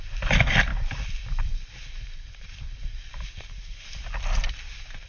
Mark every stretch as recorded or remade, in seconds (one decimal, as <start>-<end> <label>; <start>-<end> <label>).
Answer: 0.0-0.7 recorded; 0.7-3.8 remade; 3.8-5.1 recorded